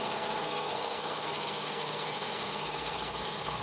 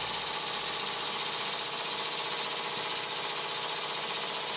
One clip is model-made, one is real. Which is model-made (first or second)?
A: first